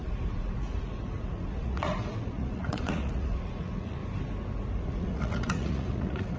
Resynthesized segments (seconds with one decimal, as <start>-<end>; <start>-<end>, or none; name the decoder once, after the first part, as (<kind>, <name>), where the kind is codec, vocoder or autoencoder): 0.0-4.0 (vocoder, Vocos); 4.7-6.4